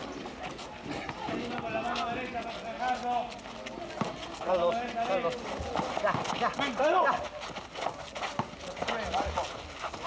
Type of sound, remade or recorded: recorded